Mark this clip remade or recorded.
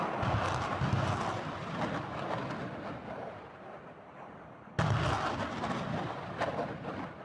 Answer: remade